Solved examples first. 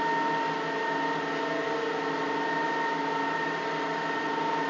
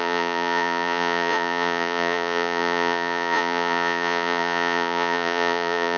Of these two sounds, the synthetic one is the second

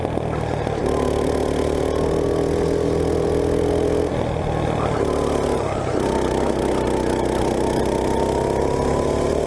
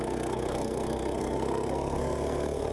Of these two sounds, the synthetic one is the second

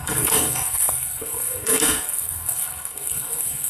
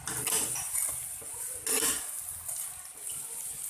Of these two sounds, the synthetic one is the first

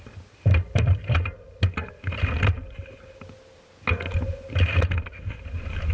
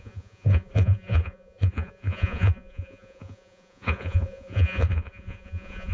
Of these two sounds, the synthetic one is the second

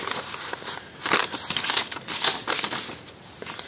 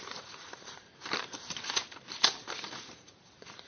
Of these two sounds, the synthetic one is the second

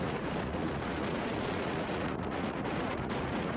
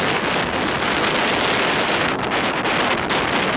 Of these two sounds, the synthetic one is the first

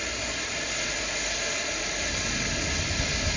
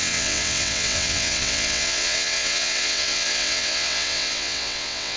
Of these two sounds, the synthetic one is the second